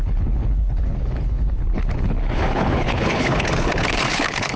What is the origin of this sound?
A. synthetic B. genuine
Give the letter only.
A